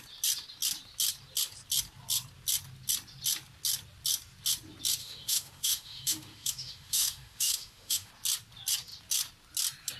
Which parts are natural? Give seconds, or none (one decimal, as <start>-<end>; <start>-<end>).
0.0-5.0; 8.1-10.0